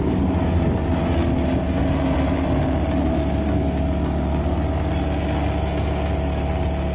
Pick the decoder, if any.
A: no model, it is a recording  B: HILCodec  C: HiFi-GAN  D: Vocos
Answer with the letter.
A